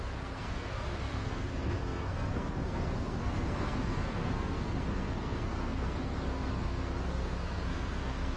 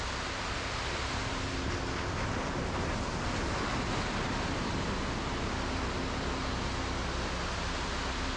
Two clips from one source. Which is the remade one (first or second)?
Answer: first